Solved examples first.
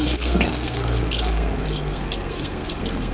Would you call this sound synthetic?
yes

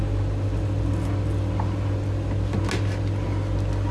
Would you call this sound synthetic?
no